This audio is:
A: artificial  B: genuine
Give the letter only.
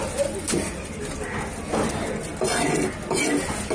B